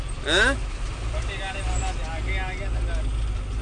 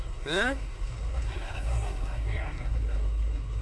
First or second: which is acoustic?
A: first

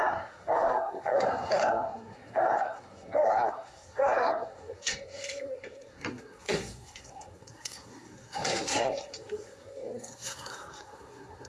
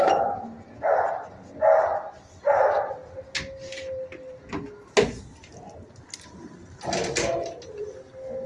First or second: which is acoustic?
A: second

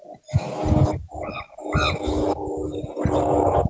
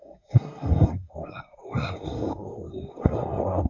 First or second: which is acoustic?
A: first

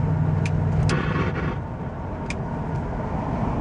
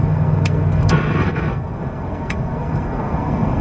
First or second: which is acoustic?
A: first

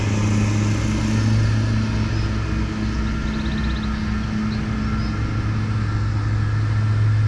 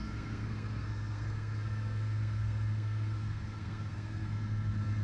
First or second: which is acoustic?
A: first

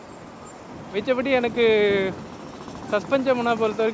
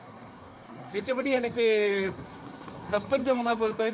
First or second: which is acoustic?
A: first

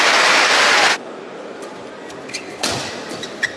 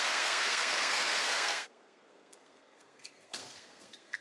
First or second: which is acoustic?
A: first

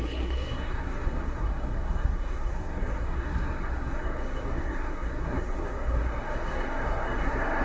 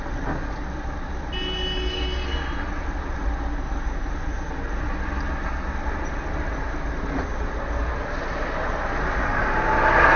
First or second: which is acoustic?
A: second